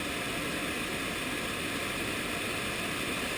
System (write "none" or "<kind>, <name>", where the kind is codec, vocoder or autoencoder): none